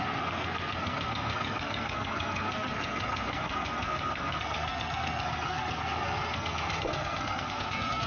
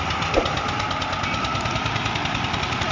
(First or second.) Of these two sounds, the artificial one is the first